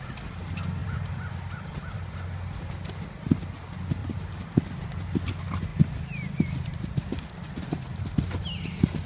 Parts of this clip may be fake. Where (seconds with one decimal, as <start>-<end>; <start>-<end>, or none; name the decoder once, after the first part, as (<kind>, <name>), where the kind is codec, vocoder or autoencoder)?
0.8-2.1 (vocoder, BigVGAN v2); 4.0-4.9; 5.7-6.7